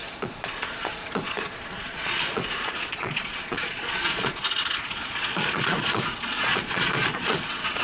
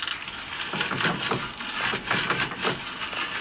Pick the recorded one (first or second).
second